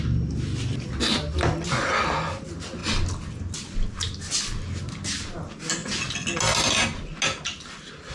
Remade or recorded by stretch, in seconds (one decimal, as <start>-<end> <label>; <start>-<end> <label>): 0.0-8.1 recorded